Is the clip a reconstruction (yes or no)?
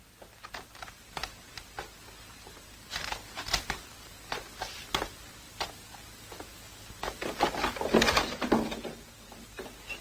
no